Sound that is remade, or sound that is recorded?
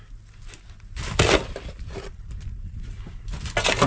recorded